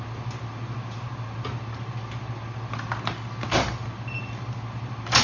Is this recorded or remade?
recorded